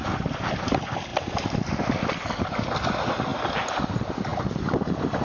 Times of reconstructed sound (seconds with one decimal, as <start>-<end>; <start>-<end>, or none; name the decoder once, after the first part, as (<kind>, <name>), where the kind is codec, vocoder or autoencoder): none